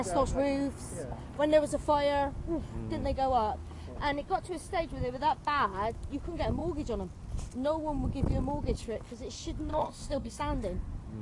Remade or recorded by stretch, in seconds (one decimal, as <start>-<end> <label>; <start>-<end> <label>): 0.0-9.7 recorded; 9.7-10.4 remade; 10.4-11.2 recorded